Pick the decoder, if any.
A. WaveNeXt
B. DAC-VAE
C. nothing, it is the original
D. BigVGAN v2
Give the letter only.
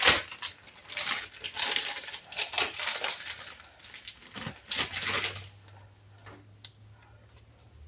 C